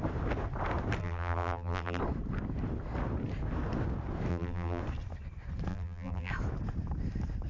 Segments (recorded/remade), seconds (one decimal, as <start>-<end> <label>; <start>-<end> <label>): 0.0-1.0 recorded; 1.0-2.0 remade; 2.0-4.3 recorded; 4.3-4.8 remade; 4.8-5.7 recorded; 5.7-6.3 remade; 6.3-7.5 recorded